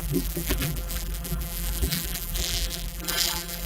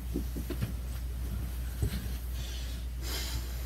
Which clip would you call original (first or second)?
second